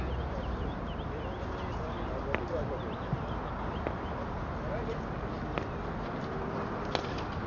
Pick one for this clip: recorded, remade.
recorded